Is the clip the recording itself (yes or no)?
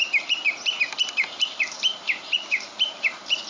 no